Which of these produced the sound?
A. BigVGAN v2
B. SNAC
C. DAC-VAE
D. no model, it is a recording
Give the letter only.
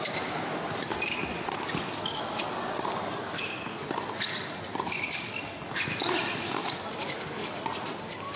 D